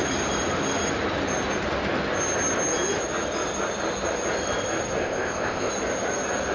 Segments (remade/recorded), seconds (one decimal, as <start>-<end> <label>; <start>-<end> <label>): 0.0-5.0 recorded; 5.0-5.7 remade; 5.7-6.5 recorded